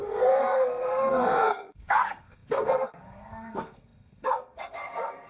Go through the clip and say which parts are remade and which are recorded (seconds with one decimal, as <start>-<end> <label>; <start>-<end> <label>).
0.0-5.3 remade